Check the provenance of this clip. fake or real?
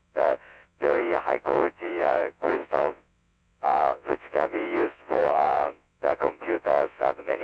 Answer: fake